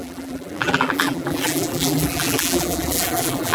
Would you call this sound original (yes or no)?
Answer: no